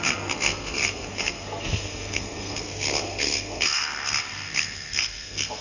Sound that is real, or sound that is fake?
fake